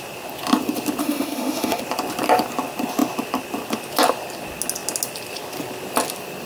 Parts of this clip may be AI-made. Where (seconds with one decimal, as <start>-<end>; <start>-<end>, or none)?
1.0-1.8